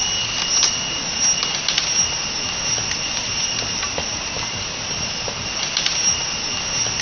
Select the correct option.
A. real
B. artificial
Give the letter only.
A